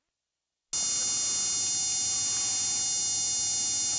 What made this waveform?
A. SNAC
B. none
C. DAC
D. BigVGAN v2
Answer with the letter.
B